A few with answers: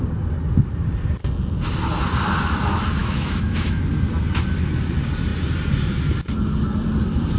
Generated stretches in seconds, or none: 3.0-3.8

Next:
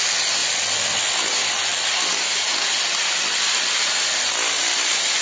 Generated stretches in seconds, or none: none

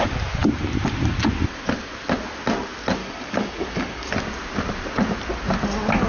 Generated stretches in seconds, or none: 3.0-4.1

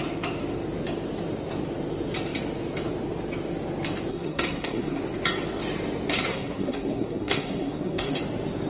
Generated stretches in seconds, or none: 4.1-5.0; 6.3-8.2

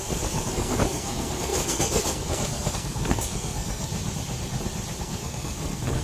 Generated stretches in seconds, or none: 0.0-3.9; 5.0-6.0

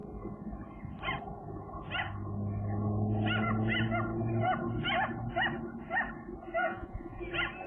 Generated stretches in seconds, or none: 6.6-7.2

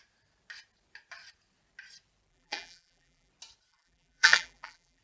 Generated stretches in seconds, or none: 2.3-3.3; 3.7-5.0

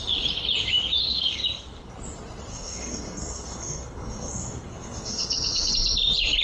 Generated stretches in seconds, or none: 1.0-1.9; 2.5-5.7